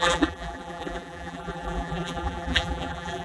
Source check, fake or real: fake